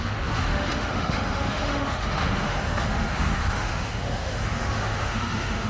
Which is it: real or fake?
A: fake